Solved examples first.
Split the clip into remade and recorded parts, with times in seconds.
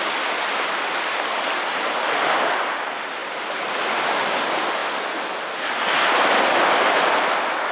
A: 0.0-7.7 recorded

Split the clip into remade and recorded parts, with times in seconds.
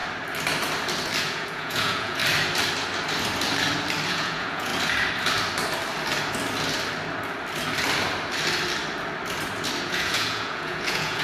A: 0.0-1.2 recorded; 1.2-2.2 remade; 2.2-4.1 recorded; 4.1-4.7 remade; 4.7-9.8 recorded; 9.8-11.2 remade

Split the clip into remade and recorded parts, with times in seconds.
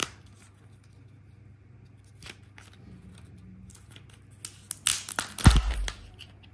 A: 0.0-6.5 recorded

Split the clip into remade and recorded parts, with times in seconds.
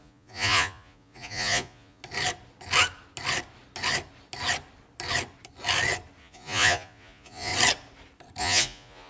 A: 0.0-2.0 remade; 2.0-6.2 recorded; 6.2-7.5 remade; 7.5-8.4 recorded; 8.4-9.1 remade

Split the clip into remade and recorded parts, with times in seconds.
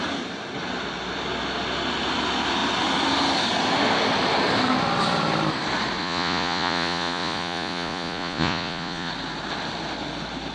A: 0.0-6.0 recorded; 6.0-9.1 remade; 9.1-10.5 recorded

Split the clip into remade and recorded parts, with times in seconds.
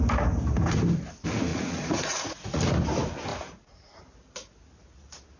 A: 0.0-1.5 recorded; 1.5-2.6 remade; 2.6-3.3 recorded; 3.3-4.0 remade; 4.0-5.4 recorded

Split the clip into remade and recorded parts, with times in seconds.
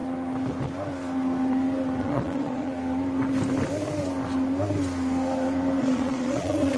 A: 0.0-2.0 recorded; 2.0-2.7 remade; 2.7-5.8 recorded; 5.8-6.8 remade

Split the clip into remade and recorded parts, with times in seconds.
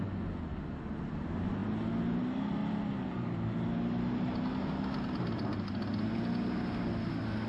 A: 0.0-7.5 recorded